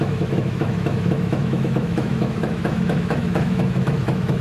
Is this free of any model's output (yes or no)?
no